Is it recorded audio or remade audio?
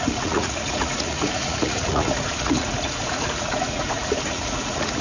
remade